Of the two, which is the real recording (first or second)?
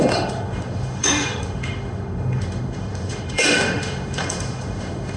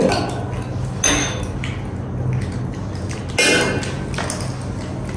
second